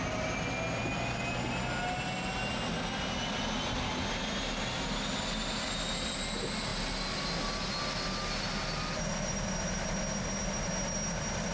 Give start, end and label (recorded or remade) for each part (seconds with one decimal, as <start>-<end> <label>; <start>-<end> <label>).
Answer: 0.0-11.5 recorded